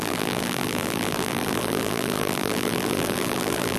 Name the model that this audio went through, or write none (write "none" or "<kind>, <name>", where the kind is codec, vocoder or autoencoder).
vocoder, BigVGAN v2